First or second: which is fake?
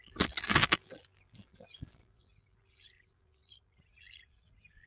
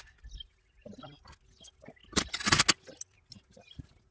first